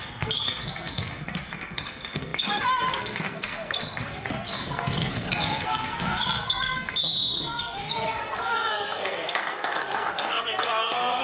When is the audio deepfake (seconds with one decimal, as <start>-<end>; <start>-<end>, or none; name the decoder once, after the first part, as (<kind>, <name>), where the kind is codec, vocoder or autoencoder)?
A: 0.0-11.2 (codec, SNAC)